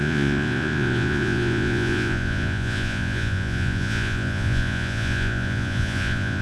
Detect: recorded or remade remade